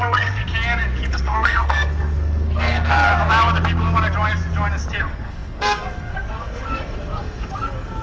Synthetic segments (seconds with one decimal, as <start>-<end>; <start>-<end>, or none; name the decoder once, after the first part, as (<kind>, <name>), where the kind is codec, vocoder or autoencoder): 0.0-0.4 (codec, SNAC); 1.1-3.1; 5.0-8.0